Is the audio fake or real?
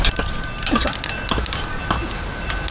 real